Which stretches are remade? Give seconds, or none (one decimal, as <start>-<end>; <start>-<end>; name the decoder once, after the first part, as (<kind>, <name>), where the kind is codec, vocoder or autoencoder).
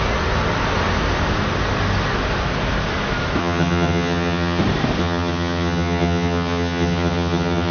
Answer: 3.4-4.6 (vocoder, HiFi-GAN); 5.0-7.7